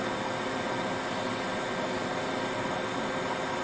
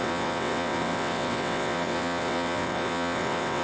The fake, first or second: second